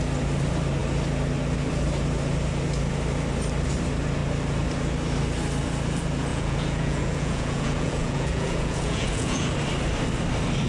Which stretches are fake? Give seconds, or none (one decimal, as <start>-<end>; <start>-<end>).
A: 6.3-9.5